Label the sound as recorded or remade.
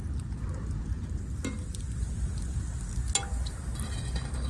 recorded